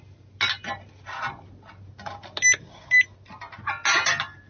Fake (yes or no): no